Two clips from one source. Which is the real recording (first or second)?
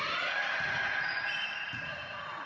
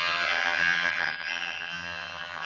first